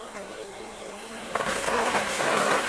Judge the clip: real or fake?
fake